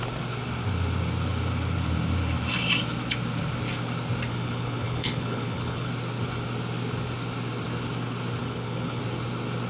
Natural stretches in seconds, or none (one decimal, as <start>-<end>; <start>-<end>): 0.0-4.3; 5.9-8.4; 9.0-9.7